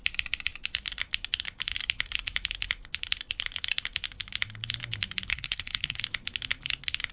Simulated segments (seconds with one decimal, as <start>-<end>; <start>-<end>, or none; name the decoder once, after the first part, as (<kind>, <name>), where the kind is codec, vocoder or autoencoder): 5.3-6.0 (codec, SNAC)